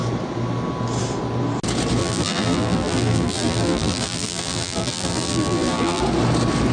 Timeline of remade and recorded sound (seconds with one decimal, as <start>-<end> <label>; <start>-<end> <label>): 0.0-2.0 recorded; 2.0-6.0 remade; 6.0-6.7 recorded